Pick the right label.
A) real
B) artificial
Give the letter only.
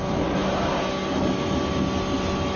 A